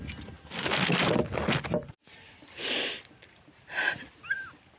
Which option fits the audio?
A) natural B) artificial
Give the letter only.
A